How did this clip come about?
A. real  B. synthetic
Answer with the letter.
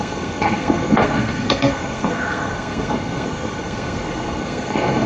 B